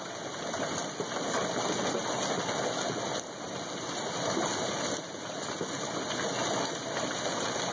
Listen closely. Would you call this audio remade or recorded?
recorded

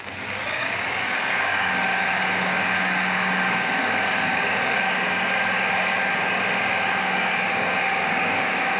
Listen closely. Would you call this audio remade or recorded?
remade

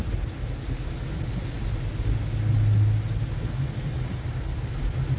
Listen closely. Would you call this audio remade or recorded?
recorded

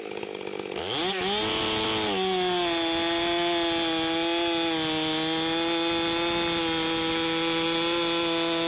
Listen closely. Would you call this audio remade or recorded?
recorded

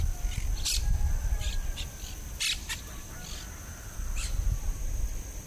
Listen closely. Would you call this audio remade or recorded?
recorded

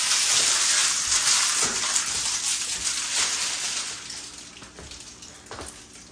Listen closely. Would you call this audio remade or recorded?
recorded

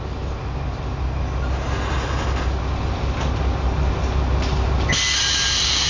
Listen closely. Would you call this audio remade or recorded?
recorded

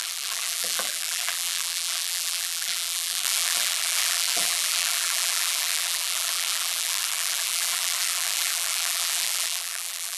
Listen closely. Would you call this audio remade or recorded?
remade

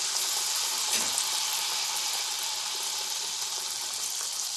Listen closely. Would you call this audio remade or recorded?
recorded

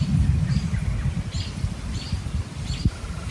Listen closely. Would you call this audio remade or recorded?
recorded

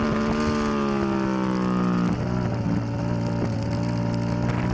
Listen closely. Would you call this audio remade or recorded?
recorded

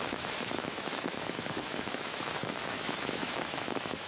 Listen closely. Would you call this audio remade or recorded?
remade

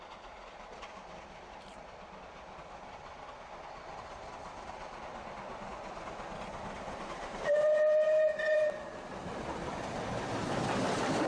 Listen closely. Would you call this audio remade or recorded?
recorded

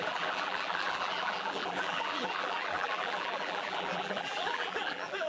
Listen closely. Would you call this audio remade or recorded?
remade